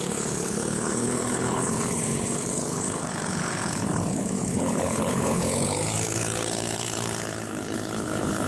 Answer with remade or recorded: remade